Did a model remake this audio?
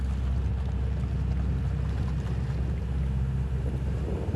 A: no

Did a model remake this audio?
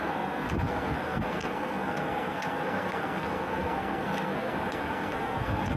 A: yes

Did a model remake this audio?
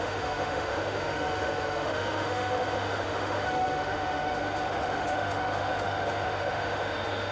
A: yes